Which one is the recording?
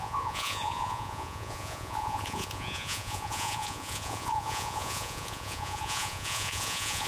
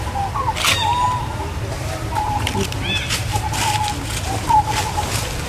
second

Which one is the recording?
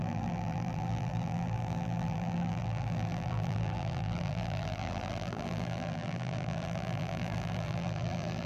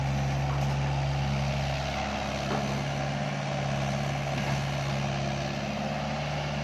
second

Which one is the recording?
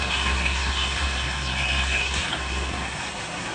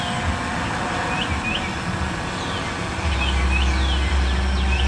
second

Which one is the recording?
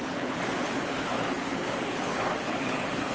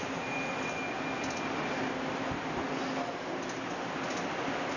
second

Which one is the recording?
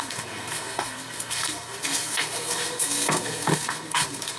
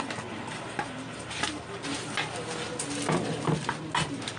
second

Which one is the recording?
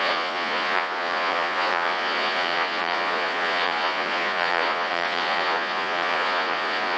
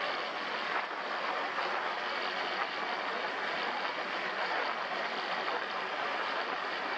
second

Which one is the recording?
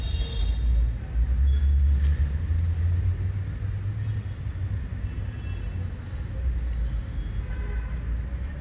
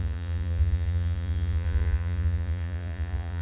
first